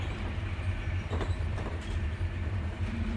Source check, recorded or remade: remade